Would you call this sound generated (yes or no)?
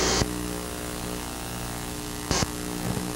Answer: yes